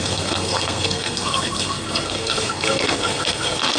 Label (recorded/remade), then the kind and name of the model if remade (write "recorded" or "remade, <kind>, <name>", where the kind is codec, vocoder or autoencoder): remade, codec, SNAC